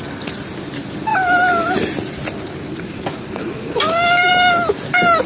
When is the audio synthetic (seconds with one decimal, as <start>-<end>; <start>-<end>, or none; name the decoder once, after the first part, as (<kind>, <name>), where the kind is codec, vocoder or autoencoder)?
none